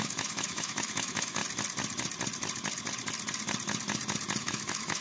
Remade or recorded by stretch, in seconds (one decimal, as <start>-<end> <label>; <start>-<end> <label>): 0.0-1.4 remade; 1.4-4.4 recorded; 4.4-5.0 remade